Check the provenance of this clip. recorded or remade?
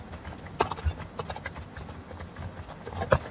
recorded